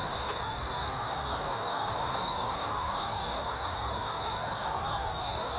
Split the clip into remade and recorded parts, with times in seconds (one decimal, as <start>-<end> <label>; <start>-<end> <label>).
0.0-5.6 remade